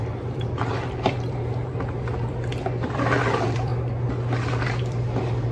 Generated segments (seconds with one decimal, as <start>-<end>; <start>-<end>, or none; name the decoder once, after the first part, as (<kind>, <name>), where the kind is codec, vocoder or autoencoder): 0.0-3.7 (vocoder, BigVGAN v2); 4.6-5.5